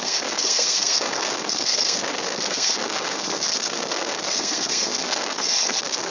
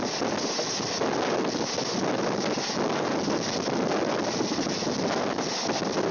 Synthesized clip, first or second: first